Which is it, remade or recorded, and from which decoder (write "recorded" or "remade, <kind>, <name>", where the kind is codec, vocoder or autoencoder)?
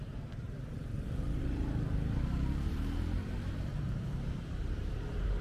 remade, vocoder, BigVGAN v2